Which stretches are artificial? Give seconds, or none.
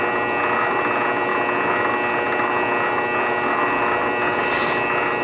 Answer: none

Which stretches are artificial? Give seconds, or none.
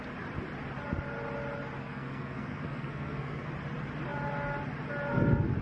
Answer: 1.8-3.5 (codec, SNAC)